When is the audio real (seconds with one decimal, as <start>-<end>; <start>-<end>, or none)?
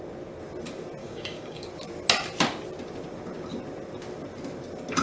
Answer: 0.0-1.0; 1.7-5.0